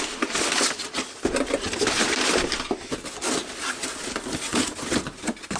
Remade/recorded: recorded